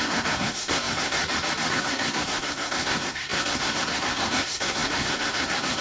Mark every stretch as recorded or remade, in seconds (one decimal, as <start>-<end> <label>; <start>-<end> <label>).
0.0-1.2 remade; 1.2-1.7 recorded; 1.7-5.8 remade